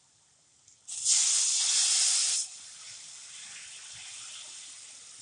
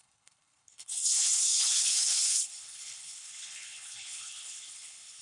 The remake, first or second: second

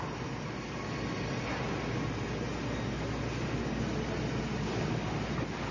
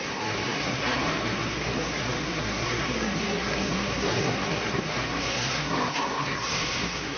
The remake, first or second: second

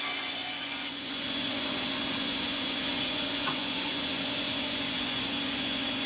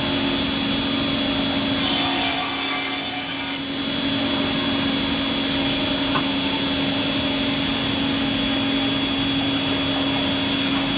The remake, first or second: first